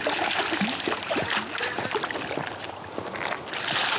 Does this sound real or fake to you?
real